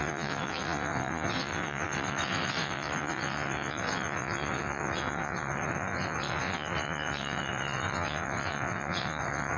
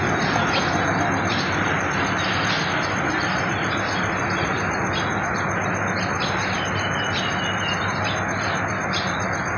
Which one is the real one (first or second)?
second